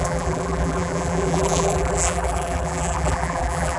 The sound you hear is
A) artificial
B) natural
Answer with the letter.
A